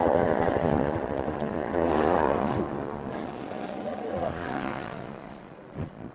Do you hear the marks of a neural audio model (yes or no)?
yes